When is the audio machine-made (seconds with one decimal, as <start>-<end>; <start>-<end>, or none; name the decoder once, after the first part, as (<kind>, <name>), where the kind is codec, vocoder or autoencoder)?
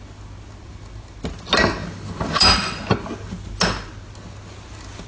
none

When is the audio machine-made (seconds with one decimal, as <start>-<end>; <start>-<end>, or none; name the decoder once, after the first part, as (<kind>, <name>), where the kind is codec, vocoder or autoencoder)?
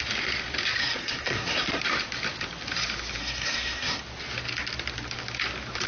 0.8-1.8 (codec, SNAC); 3.2-4.0